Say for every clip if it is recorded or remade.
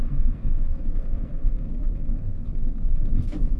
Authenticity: remade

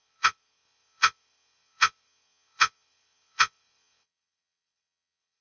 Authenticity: remade